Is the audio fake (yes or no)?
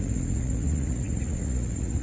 yes